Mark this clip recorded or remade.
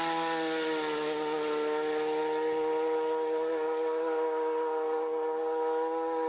recorded